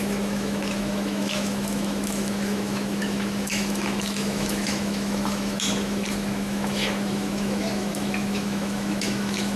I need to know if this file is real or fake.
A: fake